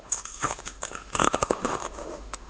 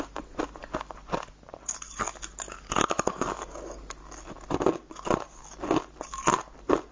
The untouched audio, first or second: second